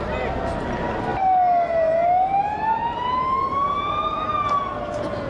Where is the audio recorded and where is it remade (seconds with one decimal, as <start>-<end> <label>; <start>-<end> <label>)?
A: 0.0-5.3 recorded